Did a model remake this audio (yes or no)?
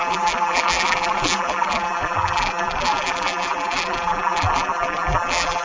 yes